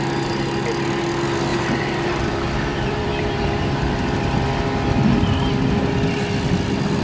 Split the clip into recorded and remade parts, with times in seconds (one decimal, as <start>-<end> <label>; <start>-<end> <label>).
0.0-1.5 recorded; 1.5-2.2 remade; 2.2-2.7 recorded; 2.7-4.4 remade; 4.4-7.0 recorded